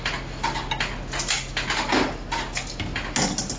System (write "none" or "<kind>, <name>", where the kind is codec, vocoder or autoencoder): none